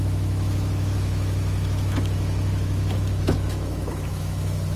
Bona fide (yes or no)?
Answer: no